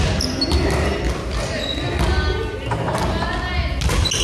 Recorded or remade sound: recorded